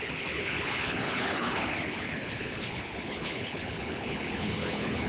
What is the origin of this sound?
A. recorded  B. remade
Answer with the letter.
B